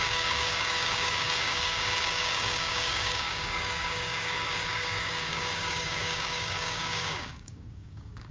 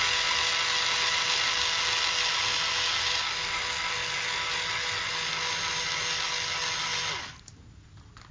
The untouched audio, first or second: second